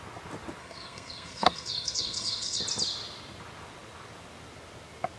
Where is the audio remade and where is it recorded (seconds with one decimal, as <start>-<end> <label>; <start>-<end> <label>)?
0.0-0.6 recorded; 0.6-2.6 remade; 2.6-5.2 recorded